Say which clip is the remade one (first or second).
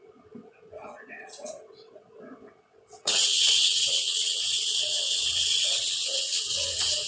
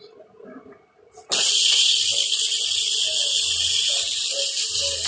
first